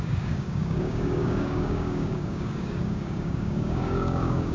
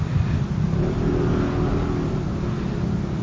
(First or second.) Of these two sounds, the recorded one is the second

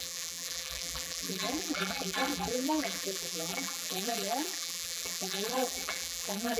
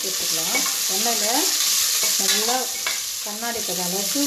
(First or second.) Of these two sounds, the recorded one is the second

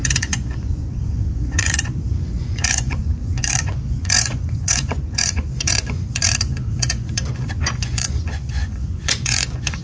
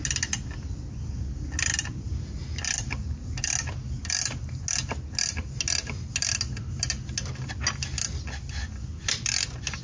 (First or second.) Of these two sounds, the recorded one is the second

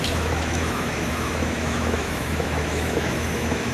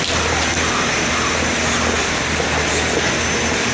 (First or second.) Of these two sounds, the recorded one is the second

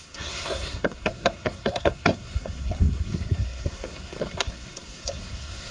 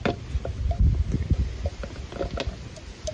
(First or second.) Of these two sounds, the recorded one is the second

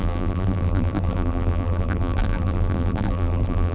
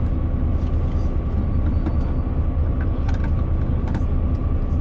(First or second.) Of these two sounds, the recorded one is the second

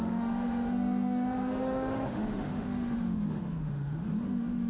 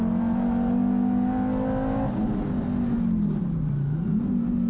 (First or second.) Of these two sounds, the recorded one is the second